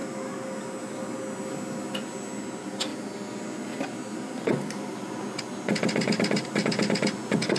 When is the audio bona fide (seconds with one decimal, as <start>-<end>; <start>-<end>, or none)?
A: 0.0-7.6